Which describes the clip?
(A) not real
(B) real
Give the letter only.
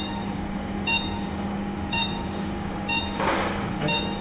A